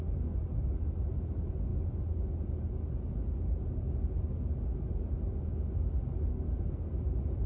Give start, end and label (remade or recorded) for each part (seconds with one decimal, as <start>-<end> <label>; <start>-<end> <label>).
0.0-6.3 recorded; 6.3-6.9 remade; 6.9-7.5 recorded